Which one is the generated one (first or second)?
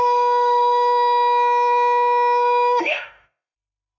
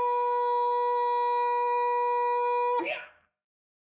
first